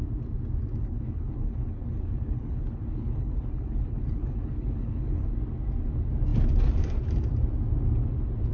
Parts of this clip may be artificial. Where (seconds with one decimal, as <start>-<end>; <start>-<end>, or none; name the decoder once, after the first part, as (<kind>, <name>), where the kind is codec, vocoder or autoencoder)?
0.8-5.3 (codec, HILCodec)